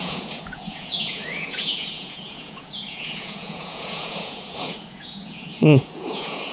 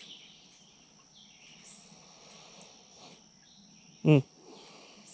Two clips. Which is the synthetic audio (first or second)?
first